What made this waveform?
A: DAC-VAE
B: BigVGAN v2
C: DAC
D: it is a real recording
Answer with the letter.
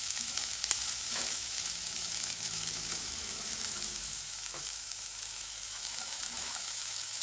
A